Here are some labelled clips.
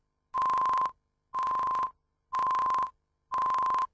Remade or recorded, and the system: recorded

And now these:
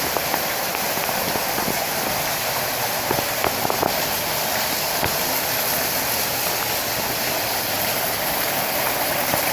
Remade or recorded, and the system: recorded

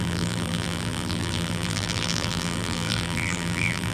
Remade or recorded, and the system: remade, vocoder, BigVGAN v2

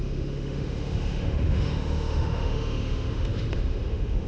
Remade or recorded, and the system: remade, autoencoder, DAC-VAE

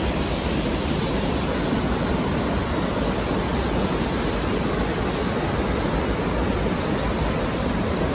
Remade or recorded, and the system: recorded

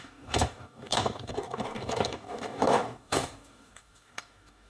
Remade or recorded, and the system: remade, codec, DAC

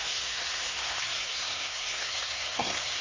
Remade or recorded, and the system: remade, codec, SNAC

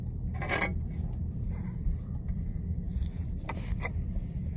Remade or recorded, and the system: recorded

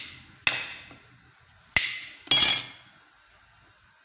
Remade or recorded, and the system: recorded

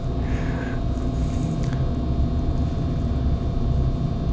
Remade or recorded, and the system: recorded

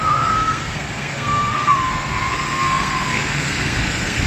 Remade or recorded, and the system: remade, codec, SNAC